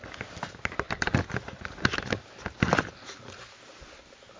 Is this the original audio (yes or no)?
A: yes